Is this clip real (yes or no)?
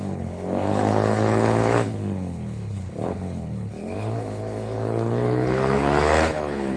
no